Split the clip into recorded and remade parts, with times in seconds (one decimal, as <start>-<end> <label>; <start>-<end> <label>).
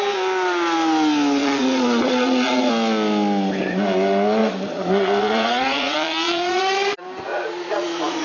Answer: 0.0-1.4 recorded; 1.4-2.7 remade; 2.7-4.4 recorded; 4.4-6.6 remade; 6.6-7.3 recorded; 7.3-8.2 remade